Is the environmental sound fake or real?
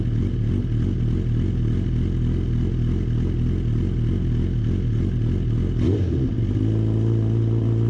real